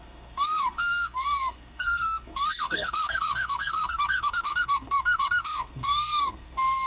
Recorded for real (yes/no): no